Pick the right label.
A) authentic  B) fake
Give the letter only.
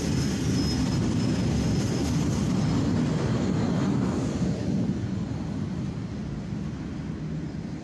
A